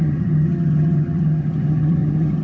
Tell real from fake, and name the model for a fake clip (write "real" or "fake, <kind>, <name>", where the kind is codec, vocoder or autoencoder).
fake, vocoder, HiFi-GAN